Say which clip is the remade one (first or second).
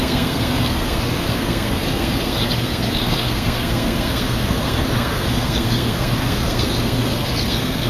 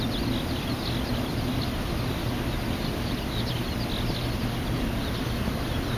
first